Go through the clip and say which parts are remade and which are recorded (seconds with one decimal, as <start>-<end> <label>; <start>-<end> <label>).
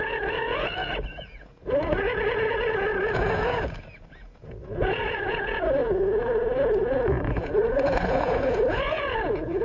0.0-9.6 remade